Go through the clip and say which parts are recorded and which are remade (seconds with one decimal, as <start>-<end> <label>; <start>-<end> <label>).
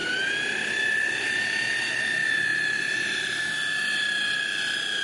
0.0-2.5 recorded; 2.5-3.4 remade; 3.4-5.0 recorded